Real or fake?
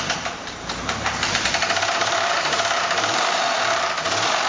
fake